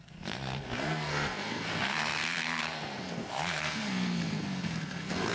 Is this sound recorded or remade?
remade